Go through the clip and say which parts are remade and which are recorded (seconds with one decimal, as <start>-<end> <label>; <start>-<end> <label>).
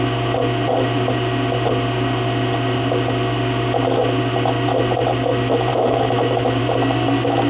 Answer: 0.0-5.7 recorded; 5.7-6.6 remade; 6.6-7.5 recorded